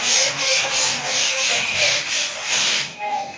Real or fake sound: fake